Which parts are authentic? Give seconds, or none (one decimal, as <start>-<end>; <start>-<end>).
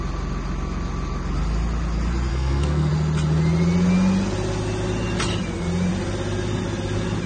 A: 0.0-2.3; 2.9-7.3